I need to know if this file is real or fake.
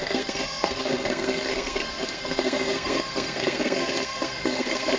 fake